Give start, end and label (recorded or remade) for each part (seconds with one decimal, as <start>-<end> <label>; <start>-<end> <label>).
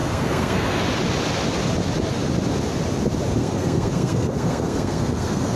0.0-0.8 remade; 0.8-3.4 recorded; 3.4-5.6 remade